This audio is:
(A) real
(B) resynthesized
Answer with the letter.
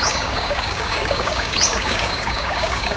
B